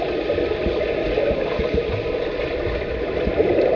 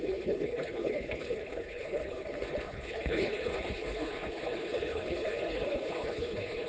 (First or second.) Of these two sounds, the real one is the first